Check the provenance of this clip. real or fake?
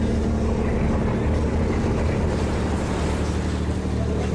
real